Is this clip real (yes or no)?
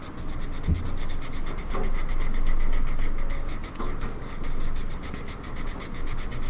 yes